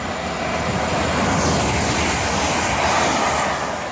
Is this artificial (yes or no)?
no